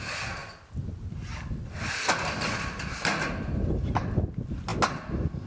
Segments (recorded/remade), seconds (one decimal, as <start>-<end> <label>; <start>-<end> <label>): 0.0-5.5 recorded